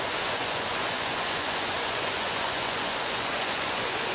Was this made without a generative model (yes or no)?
no